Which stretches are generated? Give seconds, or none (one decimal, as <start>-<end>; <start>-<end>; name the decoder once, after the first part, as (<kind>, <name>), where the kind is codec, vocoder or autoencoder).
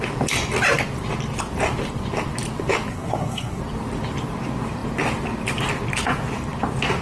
2.9-3.6 (codec, SNAC)